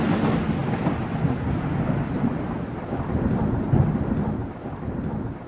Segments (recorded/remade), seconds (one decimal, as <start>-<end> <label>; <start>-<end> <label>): 0.0-0.6 recorded; 0.6-3.9 remade; 3.9-4.4 recorded; 4.4-5.1 remade; 5.1-5.5 recorded

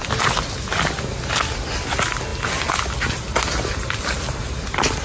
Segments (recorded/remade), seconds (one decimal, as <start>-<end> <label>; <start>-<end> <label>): 0.0-5.0 recorded

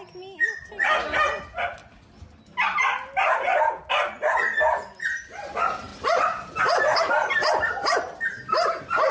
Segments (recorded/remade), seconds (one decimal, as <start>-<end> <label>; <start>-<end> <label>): 0.0-1.8 recorded; 1.8-2.8 remade; 2.8-5.9 recorded; 5.9-7.7 remade; 7.7-9.1 recorded

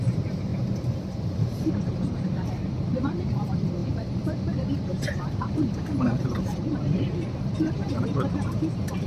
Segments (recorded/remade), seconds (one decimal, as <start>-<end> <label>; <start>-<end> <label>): 0.0-0.5 remade; 0.5-1.1 recorded; 1.1-9.1 remade

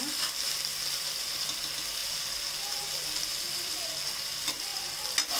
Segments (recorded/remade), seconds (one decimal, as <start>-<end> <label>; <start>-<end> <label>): 0.0-0.7 recorded; 0.7-1.3 remade; 1.3-5.4 recorded